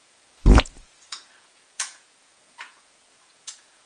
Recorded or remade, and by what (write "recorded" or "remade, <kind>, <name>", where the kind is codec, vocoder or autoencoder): remade, vocoder, Vocos